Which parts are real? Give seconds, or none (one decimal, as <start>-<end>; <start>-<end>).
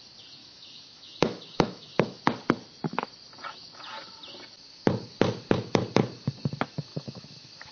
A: 0.0-0.4; 2.2-6.9